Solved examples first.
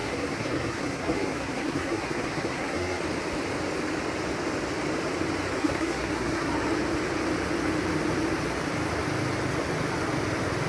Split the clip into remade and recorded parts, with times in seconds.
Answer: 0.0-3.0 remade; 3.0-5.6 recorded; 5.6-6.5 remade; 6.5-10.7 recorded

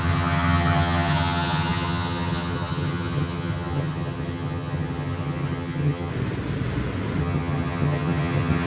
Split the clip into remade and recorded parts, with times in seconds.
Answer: 0.0-6.1 remade; 6.1-7.2 recorded; 7.2-8.7 remade

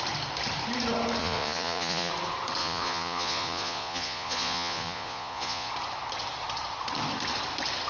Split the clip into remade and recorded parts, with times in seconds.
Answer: 0.0-1.2 recorded; 1.2-2.1 remade; 2.1-2.6 recorded; 2.6-5.7 remade; 5.7-7.9 recorded

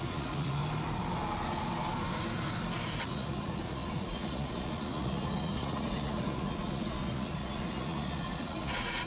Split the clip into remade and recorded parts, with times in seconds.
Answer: 0.0-0.6 remade; 0.6-3.0 recorded; 3.0-9.1 remade

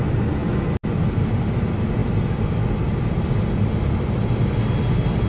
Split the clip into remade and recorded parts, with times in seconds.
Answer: 0.0-5.3 recorded

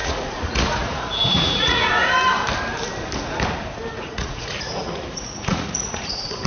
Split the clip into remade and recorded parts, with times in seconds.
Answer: 0.0-1.9 remade; 1.9-3.9 recorded; 3.9-6.5 remade

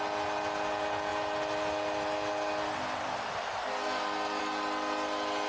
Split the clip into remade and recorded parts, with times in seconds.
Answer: 0.0-5.5 recorded

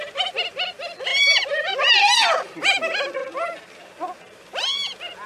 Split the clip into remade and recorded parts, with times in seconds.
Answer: 0.0-3.2 recorded; 3.2-4.0 remade; 4.0-5.3 recorded